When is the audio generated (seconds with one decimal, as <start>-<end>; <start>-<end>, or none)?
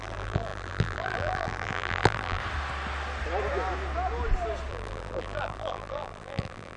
0.0-2.4; 4.7-6.8